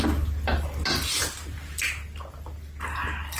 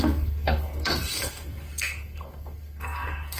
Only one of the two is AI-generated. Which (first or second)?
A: second